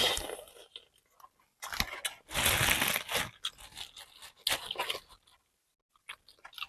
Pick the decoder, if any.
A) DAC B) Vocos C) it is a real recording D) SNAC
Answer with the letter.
C